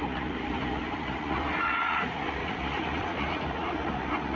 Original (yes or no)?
no